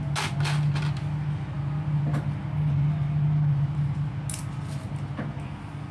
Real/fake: real